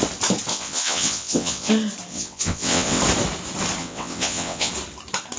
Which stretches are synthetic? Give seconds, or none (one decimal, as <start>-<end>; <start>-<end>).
0.5-1.7; 2.1-3.0; 3.8-4.7